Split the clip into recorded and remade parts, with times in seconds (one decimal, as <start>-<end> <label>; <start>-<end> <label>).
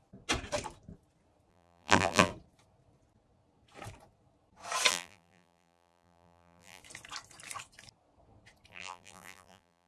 0.0-1.5 recorded; 1.5-2.3 remade; 2.3-4.9 recorded; 4.9-6.8 remade; 6.8-8.7 recorded; 8.7-9.9 remade